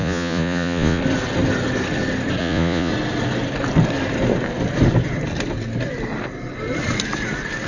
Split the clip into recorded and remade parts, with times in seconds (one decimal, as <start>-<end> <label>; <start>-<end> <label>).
0.0-1.0 remade; 1.0-2.4 recorded; 2.4-2.9 remade; 2.9-7.7 recorded